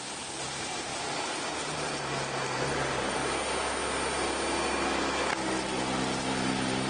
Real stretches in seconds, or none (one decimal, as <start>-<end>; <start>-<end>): 0.9-1.5; 3.2-6.5